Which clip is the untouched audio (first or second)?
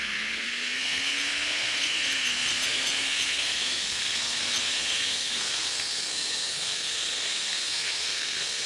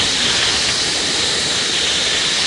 second